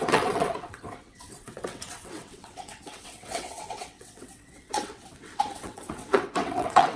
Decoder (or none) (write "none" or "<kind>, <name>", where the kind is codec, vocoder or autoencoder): vocoder, WaveNeXt